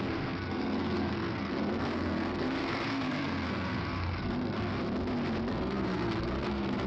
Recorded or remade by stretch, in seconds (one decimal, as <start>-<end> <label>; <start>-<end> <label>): 0.0-4.7 remade; 4.7-5.5 recorded; 5.5-6.9 remade